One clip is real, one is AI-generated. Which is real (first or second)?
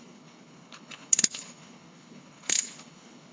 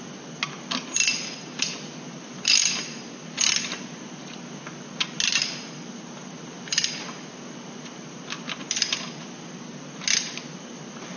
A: second